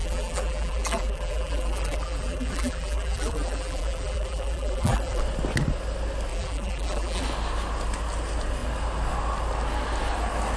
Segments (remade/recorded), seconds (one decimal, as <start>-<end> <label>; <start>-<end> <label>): 0.0-5.2 remade; 5.2-6.3 recorded; 6.3-7.2 remade; 7.2-10.6 recorded